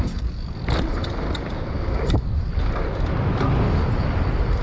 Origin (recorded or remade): remade